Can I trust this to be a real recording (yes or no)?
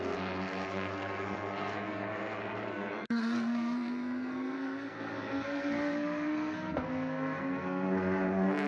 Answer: no